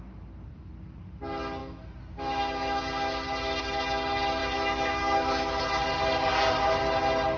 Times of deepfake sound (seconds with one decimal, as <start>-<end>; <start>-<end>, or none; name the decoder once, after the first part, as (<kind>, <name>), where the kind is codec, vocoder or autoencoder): 1.6-2.8 (autoencoder, DAC-VAE); 4.4-5.6

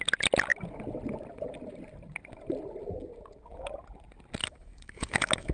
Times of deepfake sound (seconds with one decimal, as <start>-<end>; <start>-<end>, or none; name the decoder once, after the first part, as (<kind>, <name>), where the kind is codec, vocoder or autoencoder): 4.4-5.5 (autoencoder, DAC-VAE)

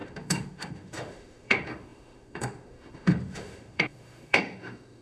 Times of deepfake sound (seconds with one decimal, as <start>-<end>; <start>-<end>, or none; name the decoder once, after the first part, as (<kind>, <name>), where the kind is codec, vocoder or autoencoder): 0.0-5.0 (autoencoder, DAC-VAE)

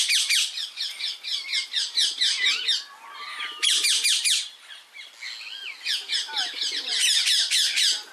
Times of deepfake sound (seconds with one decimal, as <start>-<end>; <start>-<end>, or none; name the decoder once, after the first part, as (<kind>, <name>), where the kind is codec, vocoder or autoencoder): none

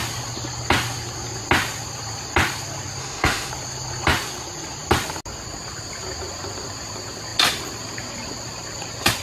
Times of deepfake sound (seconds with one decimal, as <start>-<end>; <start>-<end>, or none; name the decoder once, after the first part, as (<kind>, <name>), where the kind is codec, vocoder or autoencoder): 3.0-3.5 (autoencoder, DAC-VAE)